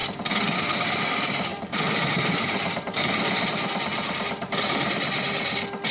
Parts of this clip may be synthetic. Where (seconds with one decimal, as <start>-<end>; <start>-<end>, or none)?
1.5-3.1; 3.9-4.9